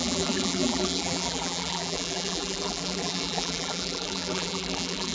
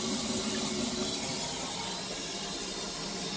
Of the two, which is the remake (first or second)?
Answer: first